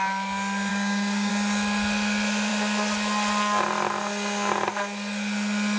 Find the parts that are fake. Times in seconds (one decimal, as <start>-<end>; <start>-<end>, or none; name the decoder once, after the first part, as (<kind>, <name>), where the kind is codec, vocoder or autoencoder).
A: 0.7-1.3 (codec, DAC)